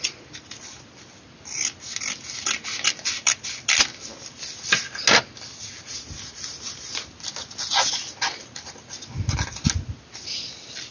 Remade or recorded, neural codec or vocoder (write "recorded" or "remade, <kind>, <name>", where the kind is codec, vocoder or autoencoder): recorded